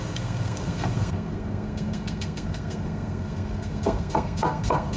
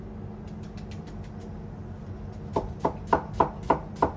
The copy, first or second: first